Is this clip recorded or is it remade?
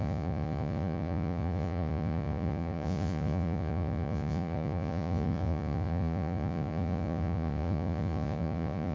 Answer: remade